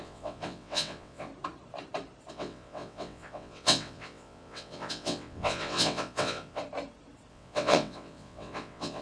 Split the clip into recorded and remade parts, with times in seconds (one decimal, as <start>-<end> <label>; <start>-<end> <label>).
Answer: 0.0-1.3 remade; 1.3-2.3 recorded; 2.3-6.6 remade; 6.6-7.3 recorded; 7.3-9.0 remade